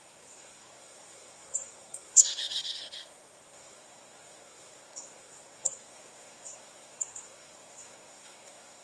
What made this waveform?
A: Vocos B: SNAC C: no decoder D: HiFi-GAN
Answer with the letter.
B